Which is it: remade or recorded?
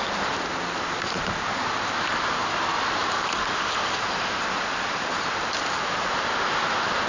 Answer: recorded